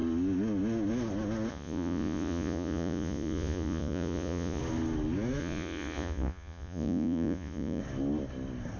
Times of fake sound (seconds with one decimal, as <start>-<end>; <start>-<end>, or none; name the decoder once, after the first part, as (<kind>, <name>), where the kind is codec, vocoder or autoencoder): 1.5-4.6 (vocoder, Vocos); 5.4-7.8